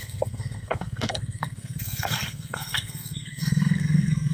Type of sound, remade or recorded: remade